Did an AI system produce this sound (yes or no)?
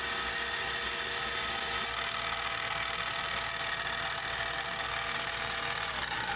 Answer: no